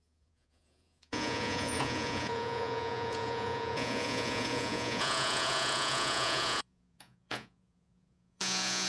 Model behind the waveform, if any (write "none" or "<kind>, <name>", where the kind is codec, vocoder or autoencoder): vocoder, Vocos